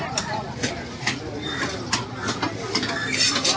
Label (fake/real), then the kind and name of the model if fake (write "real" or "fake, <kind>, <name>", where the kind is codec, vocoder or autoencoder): real